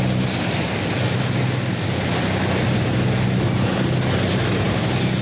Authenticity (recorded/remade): recorded